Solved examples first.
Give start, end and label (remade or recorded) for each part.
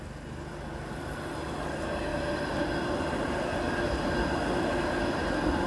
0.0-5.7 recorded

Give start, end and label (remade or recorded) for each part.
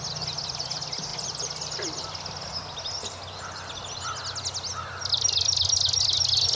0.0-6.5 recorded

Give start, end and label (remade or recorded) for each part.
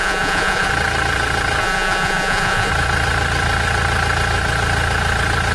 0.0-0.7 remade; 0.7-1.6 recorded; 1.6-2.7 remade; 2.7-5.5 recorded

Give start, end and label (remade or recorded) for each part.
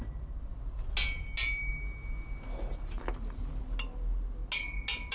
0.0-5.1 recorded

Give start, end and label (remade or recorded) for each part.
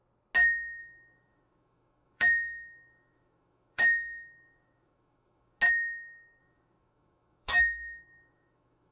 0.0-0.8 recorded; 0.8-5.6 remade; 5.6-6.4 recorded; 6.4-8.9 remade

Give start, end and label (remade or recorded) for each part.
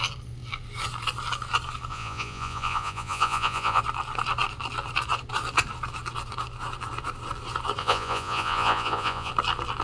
0.0-1.9 recorded; 1.9-3.8 remade; 3.8-7.8 recorded; 7.8-9.3 remade; 9.3-9.8 recorded